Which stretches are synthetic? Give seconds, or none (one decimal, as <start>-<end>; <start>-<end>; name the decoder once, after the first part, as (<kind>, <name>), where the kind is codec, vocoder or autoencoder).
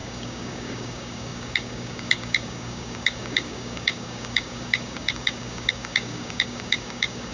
0.0-7.3 (codec, DAC)